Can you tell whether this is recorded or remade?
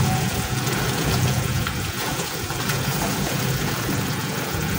remade